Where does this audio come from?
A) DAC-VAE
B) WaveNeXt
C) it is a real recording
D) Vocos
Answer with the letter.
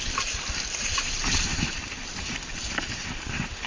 C